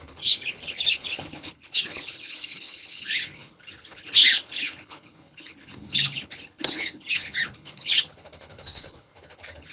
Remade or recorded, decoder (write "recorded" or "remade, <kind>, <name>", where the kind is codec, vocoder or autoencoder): remade, codec, HILCodec